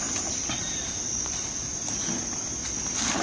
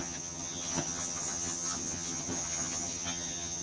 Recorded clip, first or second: first